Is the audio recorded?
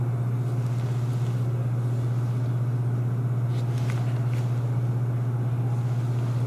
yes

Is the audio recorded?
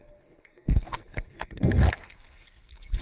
no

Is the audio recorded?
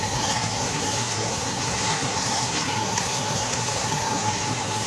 no